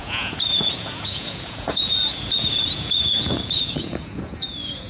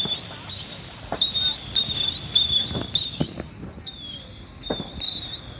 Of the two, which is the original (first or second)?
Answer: second